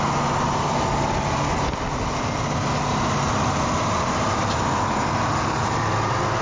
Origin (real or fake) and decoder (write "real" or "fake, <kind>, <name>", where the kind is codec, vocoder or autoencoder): real